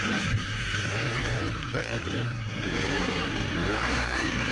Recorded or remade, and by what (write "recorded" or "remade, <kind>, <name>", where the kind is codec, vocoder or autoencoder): remade, codec, SNAC